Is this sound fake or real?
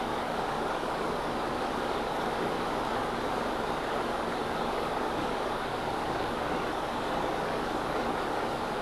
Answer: fake